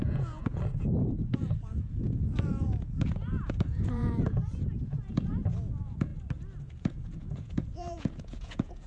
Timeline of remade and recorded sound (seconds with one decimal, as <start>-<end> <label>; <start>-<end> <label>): 0.0-6.1 remade; 6.1-6.6 recorded; 6.6-8.9 remade